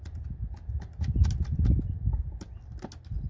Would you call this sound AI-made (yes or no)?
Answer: no